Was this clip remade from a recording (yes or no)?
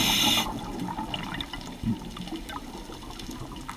no